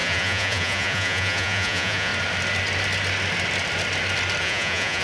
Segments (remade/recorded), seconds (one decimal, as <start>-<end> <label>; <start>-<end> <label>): 0.0-2.1 remade; 2.1-4.4 recorded; 4.4-5.0 remade